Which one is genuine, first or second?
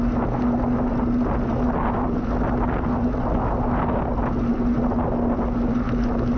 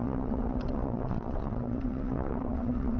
first